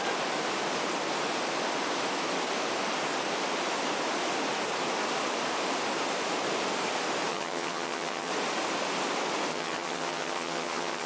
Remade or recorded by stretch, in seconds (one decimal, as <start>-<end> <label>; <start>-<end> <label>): 0.0-7.3 recorded; 7.3-8.3 remade; 8.3-9.5 recorded; 9.5-11.1 remade